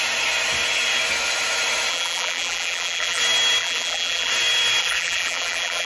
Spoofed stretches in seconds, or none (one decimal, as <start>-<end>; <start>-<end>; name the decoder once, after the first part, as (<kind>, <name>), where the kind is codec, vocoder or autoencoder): 1.9-3.2 (vocoder, BigVGAN v2); 3.6-4.3; 4.8-5.9